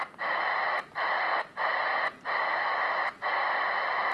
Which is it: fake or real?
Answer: real